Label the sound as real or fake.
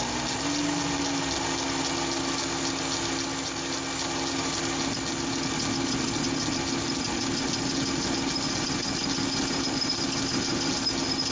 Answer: real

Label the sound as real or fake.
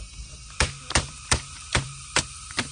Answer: fake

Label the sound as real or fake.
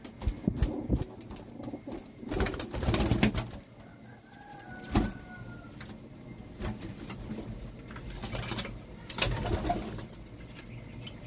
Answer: real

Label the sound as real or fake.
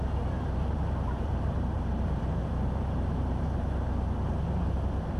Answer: fake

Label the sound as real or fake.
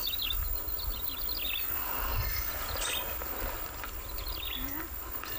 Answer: real